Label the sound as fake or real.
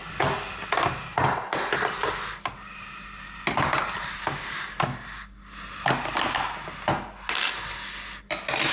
real